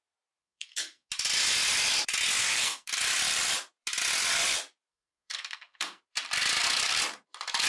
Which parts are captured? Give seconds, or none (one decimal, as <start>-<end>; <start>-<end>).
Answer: 0.0-0.4; 1.1-2.4; 2.9-4.9; 6.0-7.7